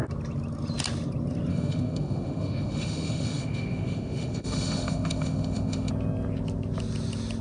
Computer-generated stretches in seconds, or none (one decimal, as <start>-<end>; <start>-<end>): 1.5-5.9